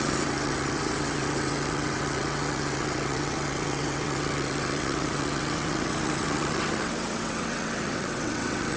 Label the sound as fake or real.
fake